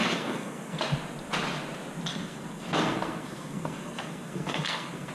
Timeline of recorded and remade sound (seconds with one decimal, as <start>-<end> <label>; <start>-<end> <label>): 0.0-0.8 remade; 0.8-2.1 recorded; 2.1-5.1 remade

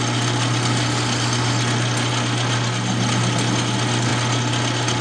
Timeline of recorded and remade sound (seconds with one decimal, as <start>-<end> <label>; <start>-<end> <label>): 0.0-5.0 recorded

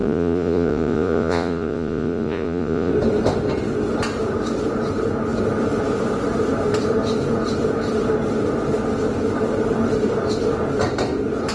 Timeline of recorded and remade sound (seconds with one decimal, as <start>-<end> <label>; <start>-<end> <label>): 0.0-2.9 remade; 2.9-11.5 recorded

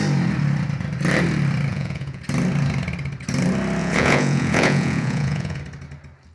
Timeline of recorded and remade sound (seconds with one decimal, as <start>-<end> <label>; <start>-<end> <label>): 0.0-1.7 recorded; 1.7-2.2 remade; 2.2-3.8 recorded; 3.8-5.6 remade; 5.6-6.3 recorded

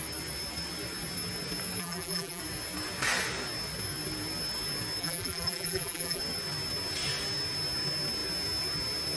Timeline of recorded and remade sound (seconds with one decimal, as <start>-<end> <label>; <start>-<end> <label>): 0.0-1.8 recorded; 1.8-2.4 remade; 2.4-5.0 recorded; 5.0-6.2 remade; 6.2-9.2 recorded

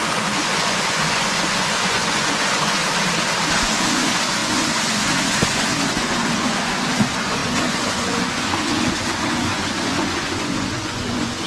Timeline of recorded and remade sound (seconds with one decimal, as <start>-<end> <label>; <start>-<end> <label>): 0.0-2.8 remade; 2.8-3.6 recorded; 3.6-11.5 remade

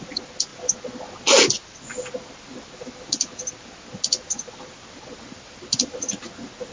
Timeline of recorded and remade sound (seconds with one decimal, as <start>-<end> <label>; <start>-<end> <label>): 0.0-6.7 recorded

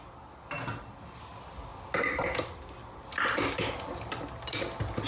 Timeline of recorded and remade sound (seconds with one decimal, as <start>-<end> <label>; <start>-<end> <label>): 0.0-5.1 recorded